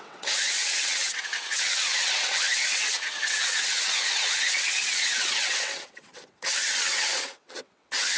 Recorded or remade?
remade